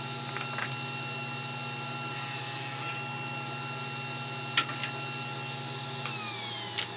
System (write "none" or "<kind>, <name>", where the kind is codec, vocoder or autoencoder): none